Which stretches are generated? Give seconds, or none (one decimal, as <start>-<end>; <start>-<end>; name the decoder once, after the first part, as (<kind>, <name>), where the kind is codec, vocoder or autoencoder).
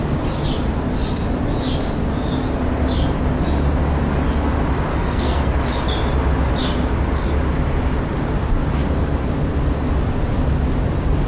4.9-5.5 (codec, SNAC)